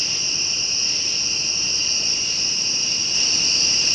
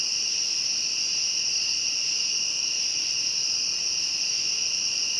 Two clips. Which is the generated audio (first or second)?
second